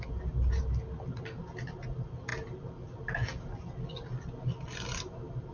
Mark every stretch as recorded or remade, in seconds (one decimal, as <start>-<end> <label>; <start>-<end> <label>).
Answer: 0.0-5.5 recorded